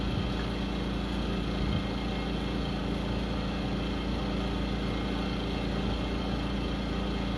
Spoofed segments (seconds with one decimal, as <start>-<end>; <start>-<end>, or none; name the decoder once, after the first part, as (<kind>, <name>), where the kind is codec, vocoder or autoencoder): none